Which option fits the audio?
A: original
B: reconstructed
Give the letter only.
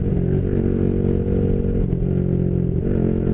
A